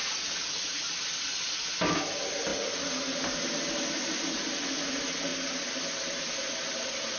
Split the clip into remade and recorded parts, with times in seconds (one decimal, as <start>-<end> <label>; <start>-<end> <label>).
0.0-7.2 recorded